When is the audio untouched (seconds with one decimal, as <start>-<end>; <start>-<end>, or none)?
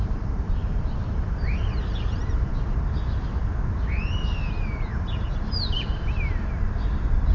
2.5-7.3